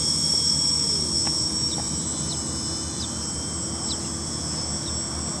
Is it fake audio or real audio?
real